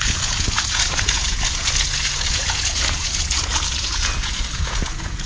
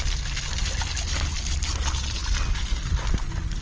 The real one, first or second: second